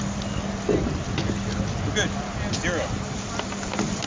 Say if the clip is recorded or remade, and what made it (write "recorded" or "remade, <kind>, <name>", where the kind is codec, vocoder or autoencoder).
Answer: recorded